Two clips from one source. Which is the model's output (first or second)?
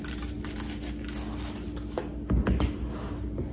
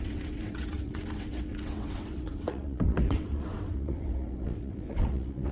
second